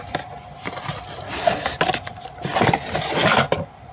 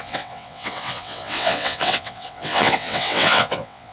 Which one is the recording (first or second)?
first